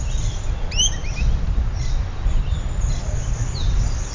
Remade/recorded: recorded